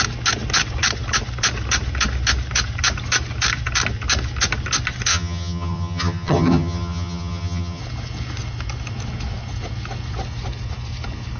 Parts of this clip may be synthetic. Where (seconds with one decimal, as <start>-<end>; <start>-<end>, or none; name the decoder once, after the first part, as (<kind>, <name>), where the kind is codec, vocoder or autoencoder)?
5.1-7.8 (vocoder, HiFi-GAN)